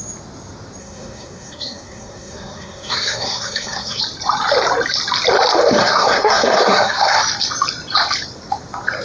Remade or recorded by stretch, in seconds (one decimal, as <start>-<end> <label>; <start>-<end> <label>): 0.0-0.8 recorded; 0.8-4.0 remade; 4.0-5.8 recorded; 5.8-7.2 remade; 7.2-9.0 recorded